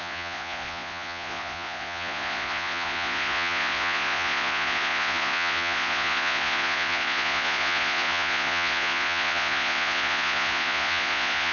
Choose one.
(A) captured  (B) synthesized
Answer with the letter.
B